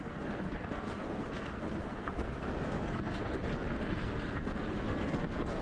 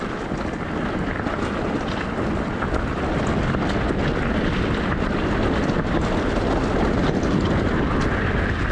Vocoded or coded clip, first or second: first